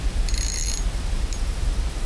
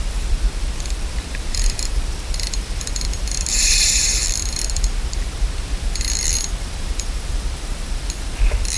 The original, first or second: first